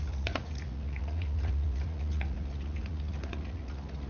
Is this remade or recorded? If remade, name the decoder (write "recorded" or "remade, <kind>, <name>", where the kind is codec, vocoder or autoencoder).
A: remade, vocoder, Vocos